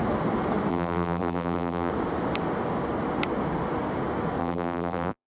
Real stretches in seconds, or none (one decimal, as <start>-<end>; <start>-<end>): 0.0-0.7; 1.9-4.4